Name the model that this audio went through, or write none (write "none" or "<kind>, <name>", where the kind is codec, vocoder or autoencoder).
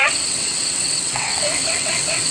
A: vocoder, WaveNeXt